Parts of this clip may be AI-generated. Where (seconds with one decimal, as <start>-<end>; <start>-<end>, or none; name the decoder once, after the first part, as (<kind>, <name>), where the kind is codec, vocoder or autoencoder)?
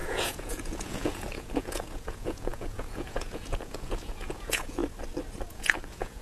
0.0-4.8 (vocoder, Vocos); 5.5-6.2